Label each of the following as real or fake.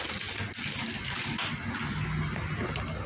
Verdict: real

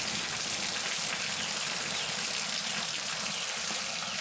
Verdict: real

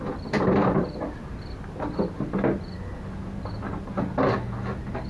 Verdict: real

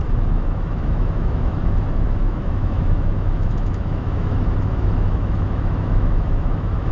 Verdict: fake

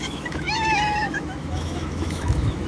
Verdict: fake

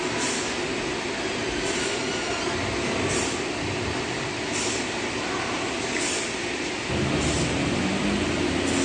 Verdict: real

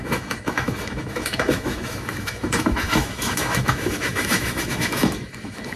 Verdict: fake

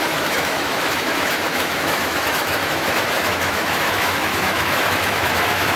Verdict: fake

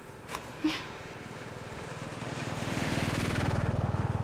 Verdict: fake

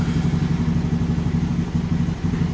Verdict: real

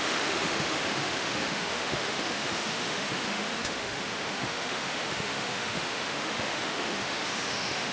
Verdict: fake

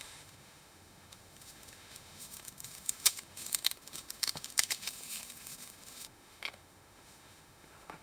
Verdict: fake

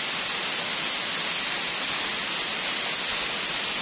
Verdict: real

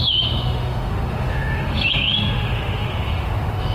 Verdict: fake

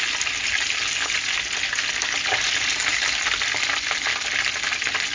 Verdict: real